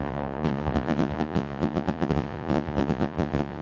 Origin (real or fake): fake